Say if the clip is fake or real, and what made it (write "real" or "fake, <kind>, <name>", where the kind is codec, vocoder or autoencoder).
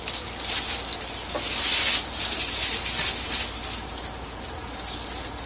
real